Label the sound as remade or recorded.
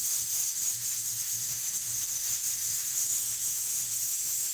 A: remade